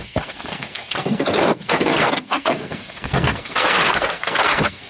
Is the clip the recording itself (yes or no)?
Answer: no